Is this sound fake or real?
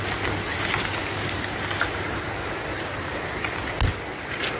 real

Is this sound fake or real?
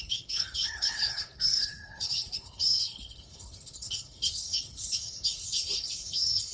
fake